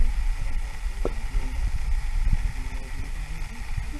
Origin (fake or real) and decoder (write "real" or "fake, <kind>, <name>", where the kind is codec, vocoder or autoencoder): real